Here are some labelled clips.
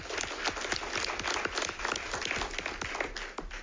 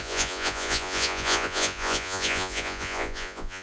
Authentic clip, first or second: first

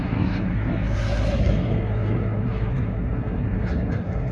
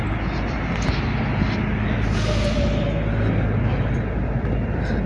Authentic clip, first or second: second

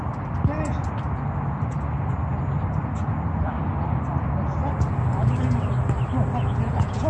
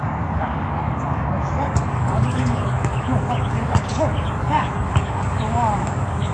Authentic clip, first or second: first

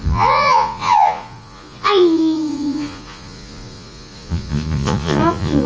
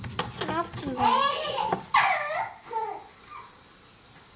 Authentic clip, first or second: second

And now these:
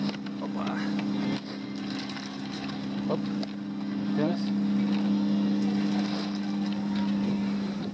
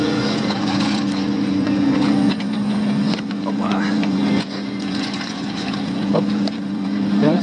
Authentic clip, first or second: first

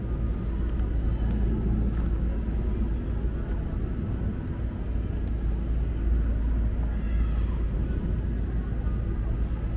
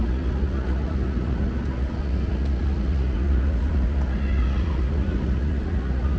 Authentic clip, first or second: first